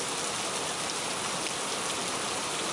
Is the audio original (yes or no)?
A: yes